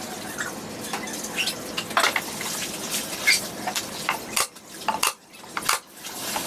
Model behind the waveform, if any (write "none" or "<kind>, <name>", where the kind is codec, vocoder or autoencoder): none